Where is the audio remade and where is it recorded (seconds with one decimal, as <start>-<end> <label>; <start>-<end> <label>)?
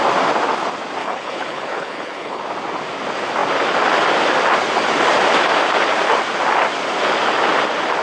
0.0-1.0 recorded; 1.0-2.4 remade; 2.4-8.0 recorded